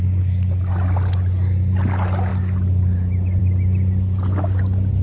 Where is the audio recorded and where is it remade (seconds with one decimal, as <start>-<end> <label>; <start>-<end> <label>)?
0.0-5.0 recorded

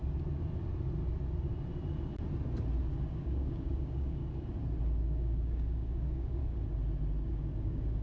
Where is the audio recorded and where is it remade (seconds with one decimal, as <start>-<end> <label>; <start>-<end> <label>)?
0.0-3.1 recorded; 3.1-4.2 remade; 4.2-5.0 recorded; 5.0-6.4 remade; 6.4-7.3 recorded; 7.3-8.0 remade

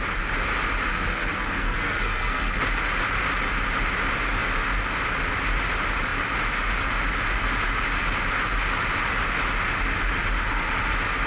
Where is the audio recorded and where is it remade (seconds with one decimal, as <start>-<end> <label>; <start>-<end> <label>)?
0.0-0.9 recorded; 0.9-2.6 remade; 2.6-11.3 recorded

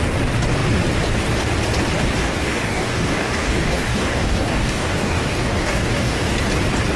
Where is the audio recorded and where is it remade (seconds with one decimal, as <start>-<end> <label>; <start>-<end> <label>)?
0.0-2.2 recorded; 2.2-6.4 remade; 6.4-7.0 recorded

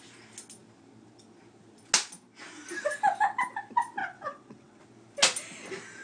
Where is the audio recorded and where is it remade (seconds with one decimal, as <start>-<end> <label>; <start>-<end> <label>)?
0.0-4.0 recorded; 4.0-4.8 remade; 4.8-6.0 recorded